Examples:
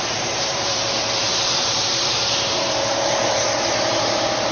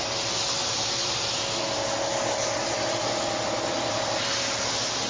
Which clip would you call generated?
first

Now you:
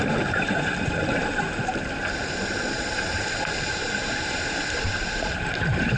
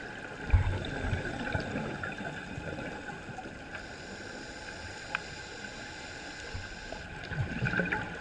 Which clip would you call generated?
first